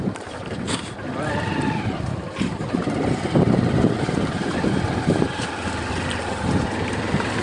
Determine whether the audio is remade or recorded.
remade